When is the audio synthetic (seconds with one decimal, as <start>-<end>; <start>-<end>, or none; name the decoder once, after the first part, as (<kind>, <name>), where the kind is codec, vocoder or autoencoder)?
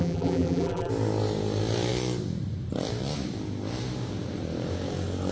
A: 0.0-0.9 (vocoder, BigVGAN v2)